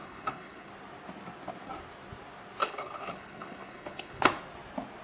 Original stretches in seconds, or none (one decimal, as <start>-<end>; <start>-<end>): 0.7-2.6; 4.2-5.0